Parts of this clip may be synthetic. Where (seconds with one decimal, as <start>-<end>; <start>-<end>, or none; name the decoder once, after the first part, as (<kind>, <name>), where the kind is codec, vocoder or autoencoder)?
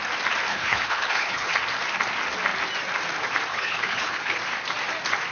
0.5-1.5 (codec, HILCodec); 3.5-4.4